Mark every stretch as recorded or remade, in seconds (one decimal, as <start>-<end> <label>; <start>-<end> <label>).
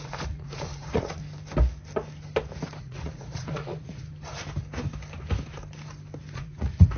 0.0-1.2 remade; 1.2-2.8 recorded; 2.8-4.1 remade; 4.1-6.3 recorded; 6.3-7.0 remade